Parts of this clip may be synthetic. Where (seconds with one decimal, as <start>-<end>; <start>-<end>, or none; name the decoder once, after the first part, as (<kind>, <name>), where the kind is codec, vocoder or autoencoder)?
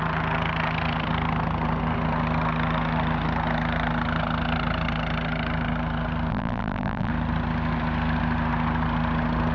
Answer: 6.3-7.1 (vocoder, BigVGAN v2)